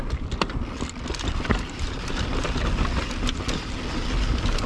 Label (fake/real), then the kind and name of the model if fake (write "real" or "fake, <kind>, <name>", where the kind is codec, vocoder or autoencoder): fake, vocoder, BigVGAN v2